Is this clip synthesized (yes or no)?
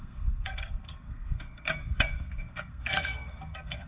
yes